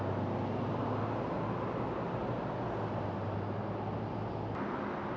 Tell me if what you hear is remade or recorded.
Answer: recorded